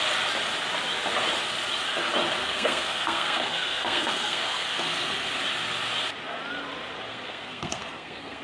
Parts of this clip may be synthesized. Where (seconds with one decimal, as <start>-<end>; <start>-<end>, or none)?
2.4-5.3; 7.1-8.4